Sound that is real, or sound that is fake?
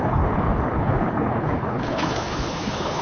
fake